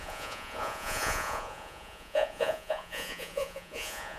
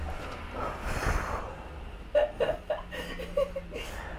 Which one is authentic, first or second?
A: second